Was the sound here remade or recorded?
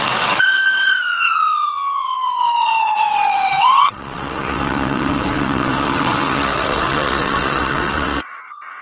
remade